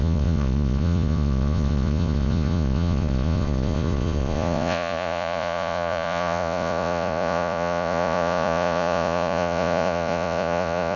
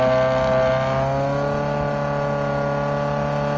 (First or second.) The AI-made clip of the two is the first